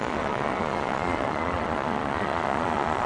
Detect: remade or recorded remade